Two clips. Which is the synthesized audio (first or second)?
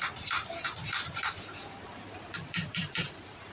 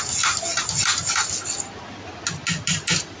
first